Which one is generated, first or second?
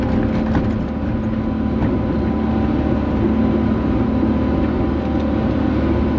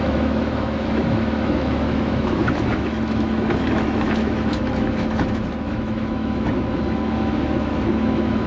second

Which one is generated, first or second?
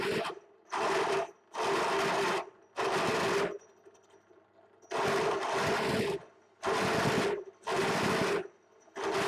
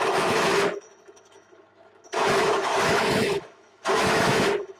second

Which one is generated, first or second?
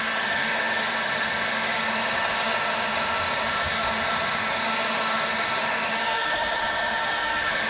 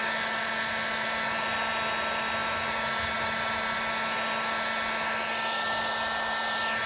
first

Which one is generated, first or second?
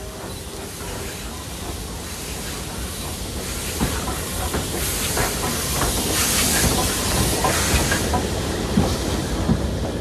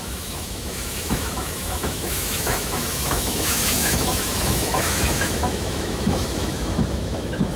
second